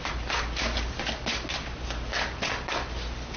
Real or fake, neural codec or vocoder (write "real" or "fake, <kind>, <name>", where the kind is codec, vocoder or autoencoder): real